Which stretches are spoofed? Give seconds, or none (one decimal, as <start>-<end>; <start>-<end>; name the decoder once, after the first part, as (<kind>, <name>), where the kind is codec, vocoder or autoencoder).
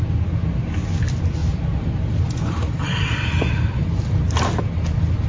1.4-4.6 (vocoder, BigVGAN v2)